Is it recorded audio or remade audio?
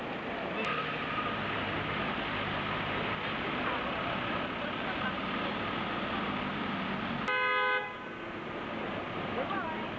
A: recorded